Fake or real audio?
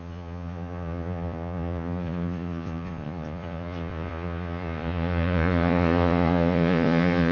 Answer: fake